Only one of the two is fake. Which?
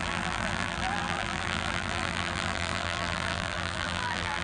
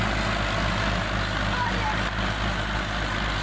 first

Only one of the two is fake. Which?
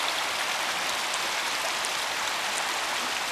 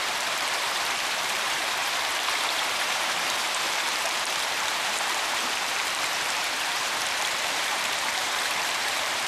second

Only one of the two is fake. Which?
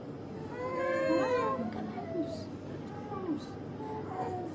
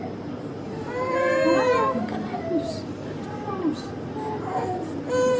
second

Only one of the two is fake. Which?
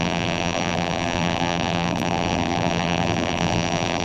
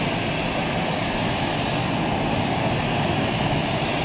first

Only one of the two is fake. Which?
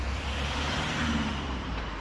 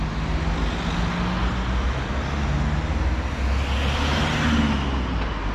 first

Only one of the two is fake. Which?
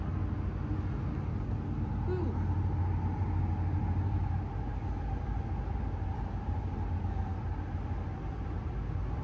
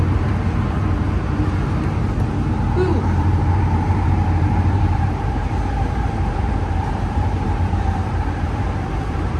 second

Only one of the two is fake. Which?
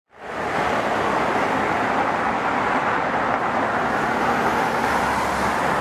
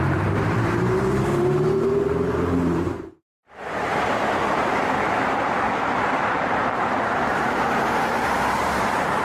second